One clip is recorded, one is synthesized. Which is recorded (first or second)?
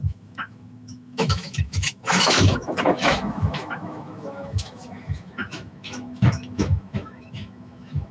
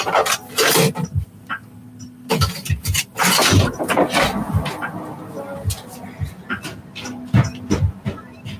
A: second